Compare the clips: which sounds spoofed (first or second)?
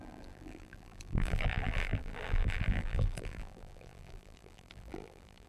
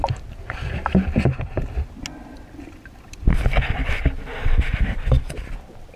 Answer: first